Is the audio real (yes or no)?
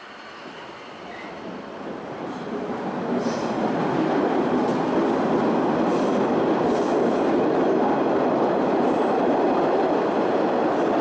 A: yes